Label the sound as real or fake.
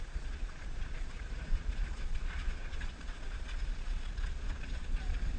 fake